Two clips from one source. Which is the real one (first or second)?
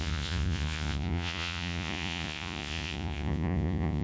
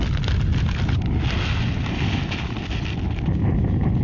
second